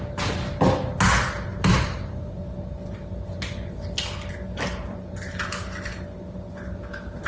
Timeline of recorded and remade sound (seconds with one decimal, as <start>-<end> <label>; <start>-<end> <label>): 0.0-1.5 recorded; 1.5-2.4 remade; 2.4-7.3 recorded